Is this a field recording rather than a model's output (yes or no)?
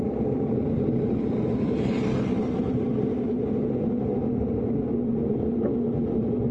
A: yes